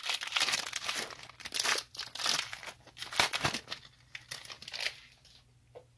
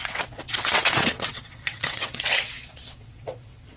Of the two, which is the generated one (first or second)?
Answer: second